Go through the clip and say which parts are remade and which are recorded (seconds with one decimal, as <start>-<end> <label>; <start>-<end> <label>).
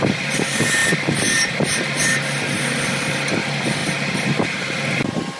0.0-5.4 recorded